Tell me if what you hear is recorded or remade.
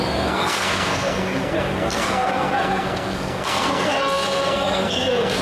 remade